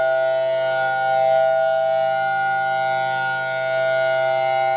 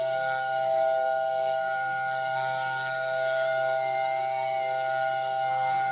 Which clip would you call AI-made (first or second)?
second